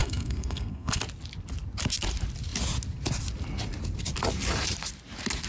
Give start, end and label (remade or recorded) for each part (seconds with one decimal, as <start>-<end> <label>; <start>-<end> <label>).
0.0-1.0 remade; 1.0-5.5 recorded